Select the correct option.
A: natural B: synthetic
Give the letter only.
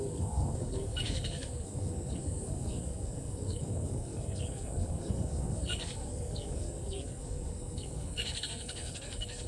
B